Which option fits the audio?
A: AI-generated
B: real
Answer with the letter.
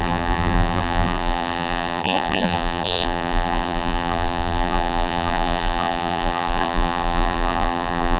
A